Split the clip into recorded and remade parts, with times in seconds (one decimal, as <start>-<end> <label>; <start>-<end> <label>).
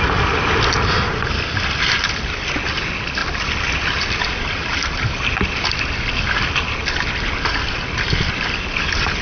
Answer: 0.0-9.2 recorded